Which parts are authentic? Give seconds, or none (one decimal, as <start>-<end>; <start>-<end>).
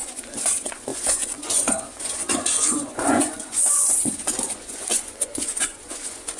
none